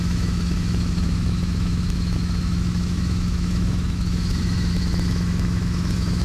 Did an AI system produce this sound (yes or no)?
yes